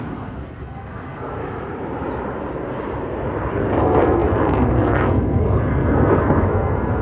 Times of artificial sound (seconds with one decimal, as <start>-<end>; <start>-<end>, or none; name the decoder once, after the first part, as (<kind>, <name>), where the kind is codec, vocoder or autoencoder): 0.0-1.4 (codec, SNAC); 3.8-7.0